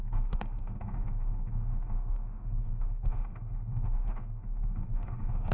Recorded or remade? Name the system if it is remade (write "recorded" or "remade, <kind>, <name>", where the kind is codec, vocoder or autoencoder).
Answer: remade, autoencoder, DAC-VAE